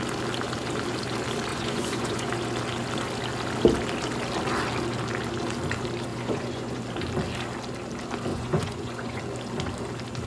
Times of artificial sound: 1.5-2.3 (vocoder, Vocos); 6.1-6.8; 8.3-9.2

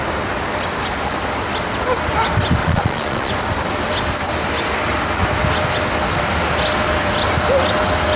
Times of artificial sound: 2.6-3.3 (vocoder, Vocos)

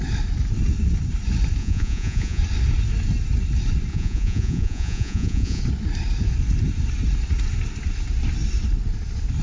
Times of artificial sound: 1.6-2.4 (vocoder, Vocos); 3.9-5.6

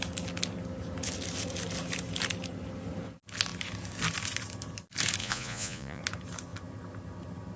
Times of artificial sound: 5.2-6.0 (vocoder, Vocos)